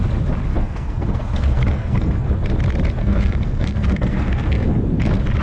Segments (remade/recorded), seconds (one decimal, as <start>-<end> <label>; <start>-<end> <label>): 0.0-0.5 recorded; 0.5-2.3 remade; 2.3-3.0 recorded; 3.0-4.8 remade; 4.8-5.4 recorded